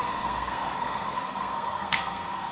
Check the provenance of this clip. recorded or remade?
remade